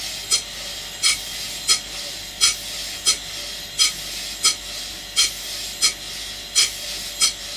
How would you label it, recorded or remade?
recorded